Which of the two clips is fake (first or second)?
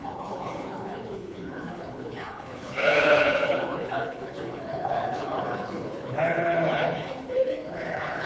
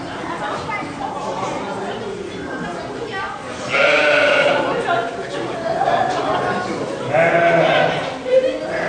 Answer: first